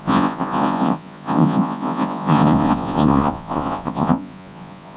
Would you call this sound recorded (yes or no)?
no